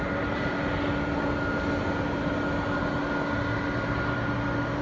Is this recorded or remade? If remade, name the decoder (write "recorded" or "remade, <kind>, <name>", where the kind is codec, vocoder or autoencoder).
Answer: recorded